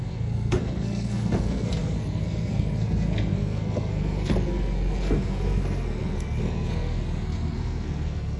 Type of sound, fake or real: fake